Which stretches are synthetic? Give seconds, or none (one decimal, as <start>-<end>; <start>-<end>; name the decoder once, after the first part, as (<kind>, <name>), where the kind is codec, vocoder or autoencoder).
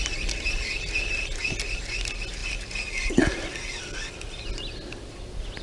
none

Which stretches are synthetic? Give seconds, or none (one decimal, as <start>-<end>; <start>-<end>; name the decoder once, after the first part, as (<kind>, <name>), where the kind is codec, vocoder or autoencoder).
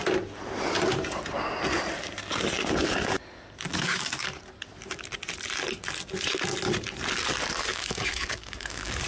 3.7-4.4 (codec, DAC); 7.7-9.1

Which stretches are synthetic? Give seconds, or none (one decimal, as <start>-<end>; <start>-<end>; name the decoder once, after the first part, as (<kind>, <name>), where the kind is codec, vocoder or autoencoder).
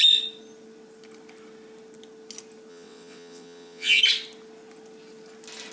2.7-4.0 (vocoder, WaveNeXt)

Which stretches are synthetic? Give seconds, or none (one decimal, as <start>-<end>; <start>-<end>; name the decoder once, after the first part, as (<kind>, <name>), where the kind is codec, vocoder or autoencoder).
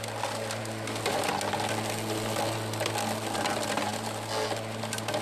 none